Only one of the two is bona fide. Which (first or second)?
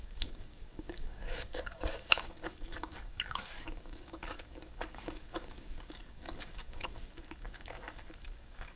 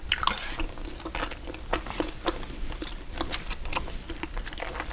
second